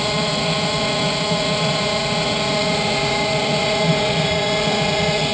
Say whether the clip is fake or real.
fake